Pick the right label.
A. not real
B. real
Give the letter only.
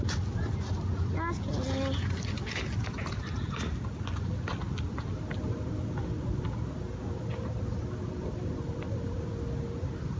B